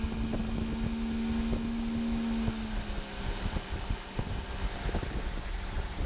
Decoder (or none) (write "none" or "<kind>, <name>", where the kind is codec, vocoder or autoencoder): none